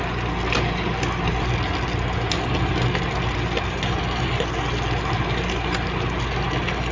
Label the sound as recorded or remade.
recorded